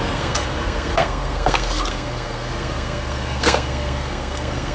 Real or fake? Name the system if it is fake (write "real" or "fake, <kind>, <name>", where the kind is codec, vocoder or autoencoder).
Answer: fake, codec, SNAC